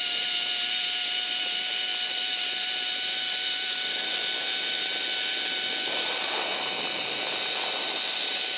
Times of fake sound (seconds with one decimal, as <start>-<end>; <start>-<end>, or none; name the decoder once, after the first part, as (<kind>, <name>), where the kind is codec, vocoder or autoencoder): none

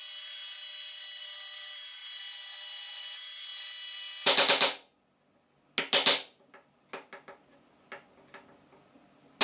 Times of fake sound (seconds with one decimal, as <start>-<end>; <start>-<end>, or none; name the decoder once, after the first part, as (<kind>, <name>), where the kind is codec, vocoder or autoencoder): none

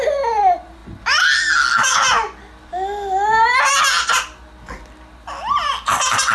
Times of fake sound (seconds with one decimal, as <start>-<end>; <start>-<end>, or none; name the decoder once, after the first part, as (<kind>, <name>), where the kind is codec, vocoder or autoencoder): none

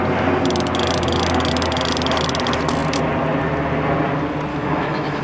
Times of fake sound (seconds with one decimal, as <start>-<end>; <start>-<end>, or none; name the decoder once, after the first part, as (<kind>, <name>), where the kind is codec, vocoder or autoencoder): 4.5-5.2 (autoencoder, DAC-VAE)

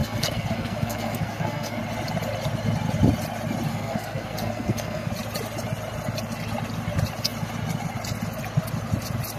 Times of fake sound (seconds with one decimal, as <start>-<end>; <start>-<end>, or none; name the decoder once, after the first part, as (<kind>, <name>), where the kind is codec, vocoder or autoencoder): 0.0-1.8 (codec, SNAC); 3.7-5.1

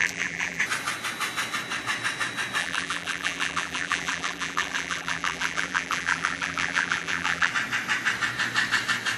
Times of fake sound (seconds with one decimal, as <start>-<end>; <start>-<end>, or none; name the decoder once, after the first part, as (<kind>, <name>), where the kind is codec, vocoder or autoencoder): 0.0-0.6 (vocoder, BigVGAN v2); 2.6-7.5